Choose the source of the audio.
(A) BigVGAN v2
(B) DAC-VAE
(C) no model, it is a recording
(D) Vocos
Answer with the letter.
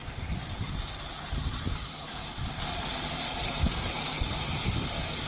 C